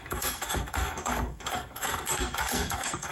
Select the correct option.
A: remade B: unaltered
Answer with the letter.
A